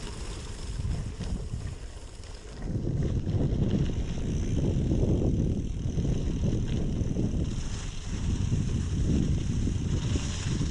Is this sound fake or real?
real